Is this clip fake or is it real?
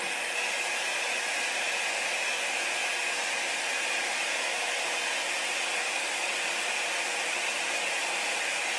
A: real